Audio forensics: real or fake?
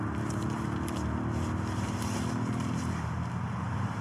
real